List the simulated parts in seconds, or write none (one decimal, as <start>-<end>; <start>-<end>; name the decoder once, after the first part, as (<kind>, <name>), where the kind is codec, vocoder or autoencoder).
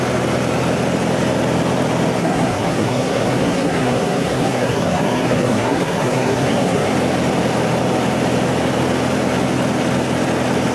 2.2-6.9 (codec, SNAC)